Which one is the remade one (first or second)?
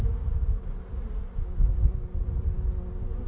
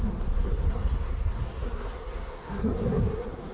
second